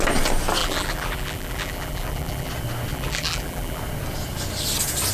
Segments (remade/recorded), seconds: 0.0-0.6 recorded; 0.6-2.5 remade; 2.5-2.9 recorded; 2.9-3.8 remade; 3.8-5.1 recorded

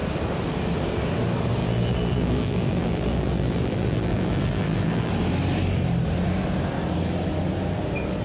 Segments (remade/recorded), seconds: 0.0-1.6 recorded; 1.6-5.1 remade; 5.1-8.2 recorded

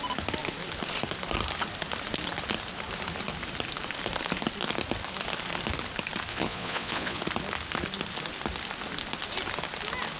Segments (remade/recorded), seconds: 0.0-6.3 recorded; 6.3-7.2 remade; 7.2-10.2 recorded